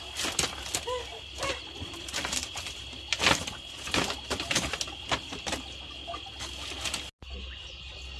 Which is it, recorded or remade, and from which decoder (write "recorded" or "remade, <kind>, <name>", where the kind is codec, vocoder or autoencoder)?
recorded